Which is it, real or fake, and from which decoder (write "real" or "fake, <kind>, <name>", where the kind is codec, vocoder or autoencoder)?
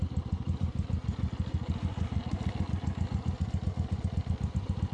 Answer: real